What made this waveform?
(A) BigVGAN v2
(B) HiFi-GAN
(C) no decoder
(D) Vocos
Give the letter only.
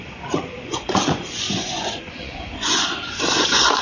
D